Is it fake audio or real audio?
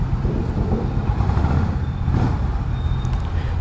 real